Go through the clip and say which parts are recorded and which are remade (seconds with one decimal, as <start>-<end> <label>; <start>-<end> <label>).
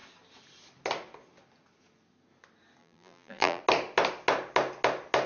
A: 0.0-2.8 recorded; 2.8-3.6 remade; 3.6-5.3 recorded